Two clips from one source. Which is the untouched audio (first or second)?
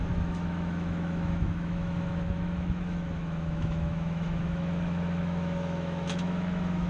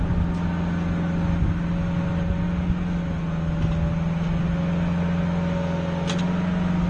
second